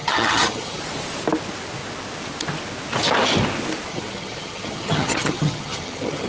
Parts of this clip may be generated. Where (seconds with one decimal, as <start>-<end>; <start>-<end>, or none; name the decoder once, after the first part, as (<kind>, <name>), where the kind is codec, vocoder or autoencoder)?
0.0-0.8 (vocoder, HiFi-GAN); 3.9-6.3

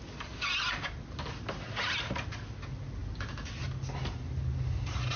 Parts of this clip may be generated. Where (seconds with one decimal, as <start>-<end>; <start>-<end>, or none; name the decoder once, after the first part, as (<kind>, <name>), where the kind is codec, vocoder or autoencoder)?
none

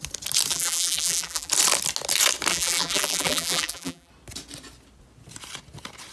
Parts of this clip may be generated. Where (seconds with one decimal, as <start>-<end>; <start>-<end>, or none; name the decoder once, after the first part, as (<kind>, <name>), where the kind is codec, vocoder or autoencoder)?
0.5-1.5 (vocoder, BigVGAN v2); 2.5-4.1